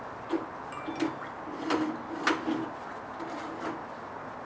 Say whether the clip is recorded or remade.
recorded